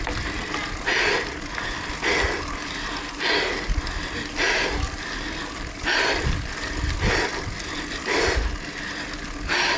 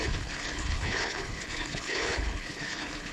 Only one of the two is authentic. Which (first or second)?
first